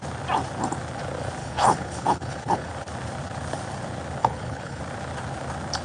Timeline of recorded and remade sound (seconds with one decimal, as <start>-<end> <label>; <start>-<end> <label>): 0.0-1.4 recorded; 1.4-2.7 remade; 2.7-4.2 recorded; 4.2-4.8 remade; 4.8-5.8 recorded